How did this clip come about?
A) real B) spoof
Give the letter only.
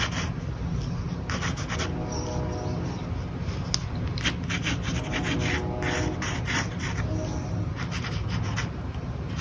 A